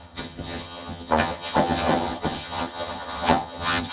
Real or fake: fake